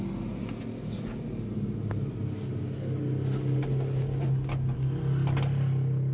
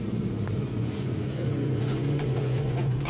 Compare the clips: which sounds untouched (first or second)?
first